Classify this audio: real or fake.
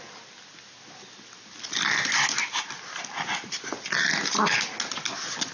real